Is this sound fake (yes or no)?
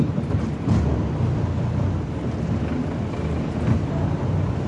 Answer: no